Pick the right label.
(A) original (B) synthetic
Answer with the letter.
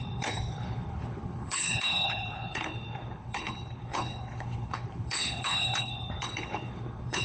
B